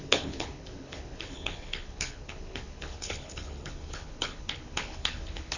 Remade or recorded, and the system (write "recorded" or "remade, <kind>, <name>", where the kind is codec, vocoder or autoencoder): remade, codec, HILCodec